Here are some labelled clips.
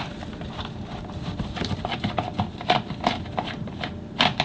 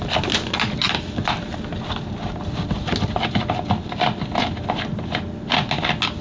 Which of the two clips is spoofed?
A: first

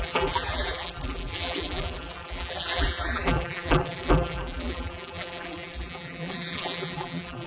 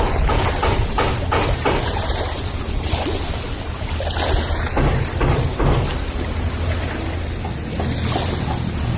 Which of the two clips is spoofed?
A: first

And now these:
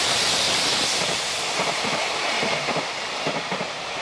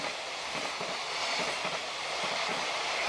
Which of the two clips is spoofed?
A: first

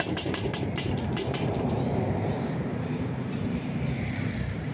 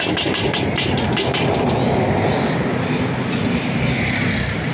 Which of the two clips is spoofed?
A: first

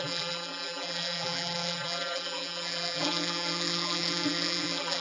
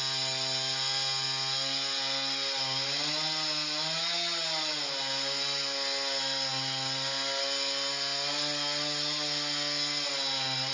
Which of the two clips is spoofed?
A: first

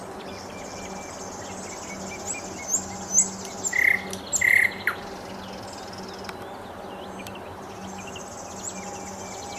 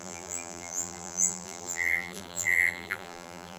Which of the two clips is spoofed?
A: second